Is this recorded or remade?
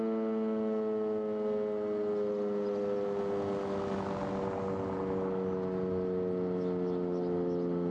recorded